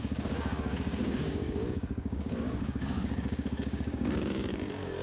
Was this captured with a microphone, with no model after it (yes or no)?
no